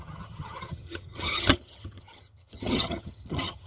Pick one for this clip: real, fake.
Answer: fake